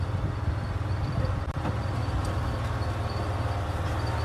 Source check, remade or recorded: recorded